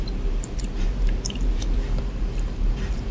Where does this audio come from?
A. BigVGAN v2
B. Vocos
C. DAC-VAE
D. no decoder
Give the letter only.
A